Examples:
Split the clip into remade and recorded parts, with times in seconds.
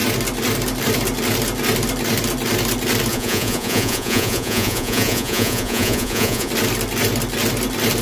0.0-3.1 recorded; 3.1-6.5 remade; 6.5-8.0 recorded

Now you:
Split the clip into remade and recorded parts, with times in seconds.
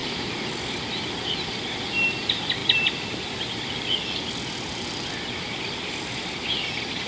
0.0-7.1 recorded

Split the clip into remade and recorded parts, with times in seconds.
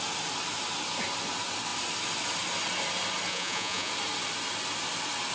0.0-3.3 recorded; 3.3-3.9 remade; 3.9-5.3 recorded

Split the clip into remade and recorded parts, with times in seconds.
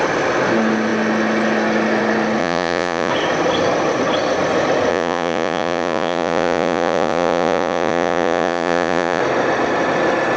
0.0-2.4 recorded; 2.4-3.1 remade; 3.1-4.9 recorded; 4.9-9.2 remade; 9.2-10.4 recorded